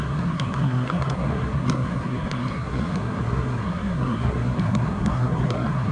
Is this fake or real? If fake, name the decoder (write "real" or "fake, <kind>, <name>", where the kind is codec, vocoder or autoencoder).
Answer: fake, codec, SNAC